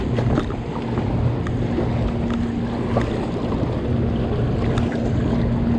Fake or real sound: real